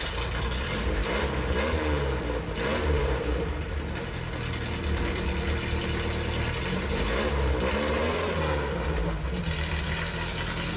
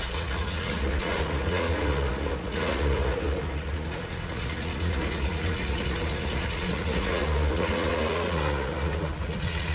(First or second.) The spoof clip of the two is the second